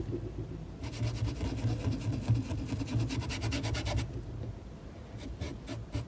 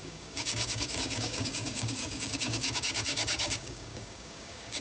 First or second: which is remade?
second